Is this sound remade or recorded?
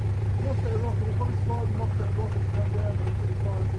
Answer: recorded